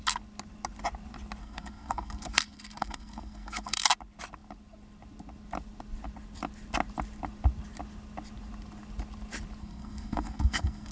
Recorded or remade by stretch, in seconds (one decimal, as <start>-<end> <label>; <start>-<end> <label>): 0.0-1.4 recorded; 1.4-3.9 remade; 3.9-9.6 recorded; 9.6-10.9 remade